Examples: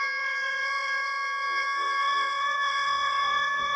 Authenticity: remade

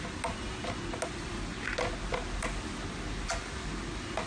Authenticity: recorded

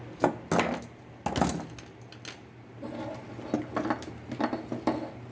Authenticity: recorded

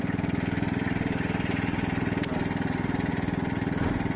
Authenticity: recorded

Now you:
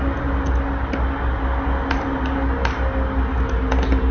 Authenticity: recorded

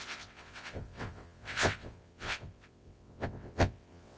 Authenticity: remade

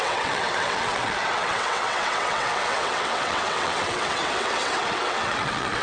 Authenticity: remade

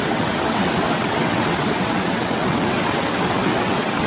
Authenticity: remade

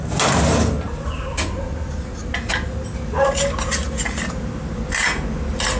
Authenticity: recorded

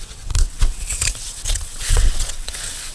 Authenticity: remade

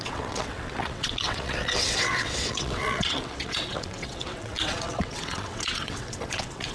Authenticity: remade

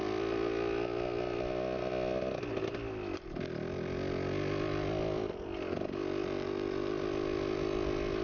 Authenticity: recorded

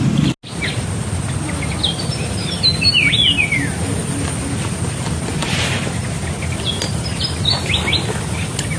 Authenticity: recorded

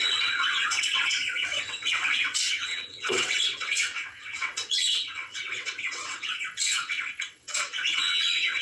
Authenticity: remade